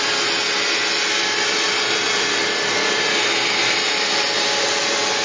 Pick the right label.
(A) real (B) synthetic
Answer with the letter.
A